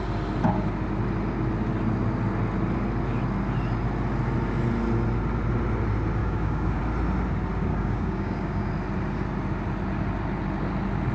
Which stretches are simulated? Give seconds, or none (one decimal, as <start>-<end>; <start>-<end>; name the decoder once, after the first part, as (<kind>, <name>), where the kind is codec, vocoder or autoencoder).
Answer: 6.2-6.8 (codec, DAC); 7.7-8.7